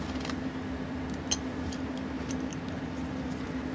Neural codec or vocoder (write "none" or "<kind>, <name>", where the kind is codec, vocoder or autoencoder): none